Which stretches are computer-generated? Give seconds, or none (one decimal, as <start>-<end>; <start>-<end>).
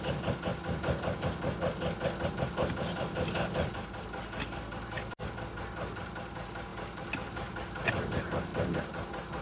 none